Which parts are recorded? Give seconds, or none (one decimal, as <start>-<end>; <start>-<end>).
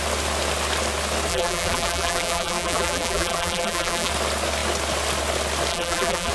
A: 0.0-1.3; 4.1-5.7